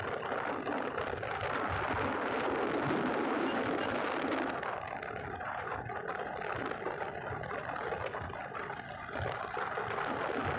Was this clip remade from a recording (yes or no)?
no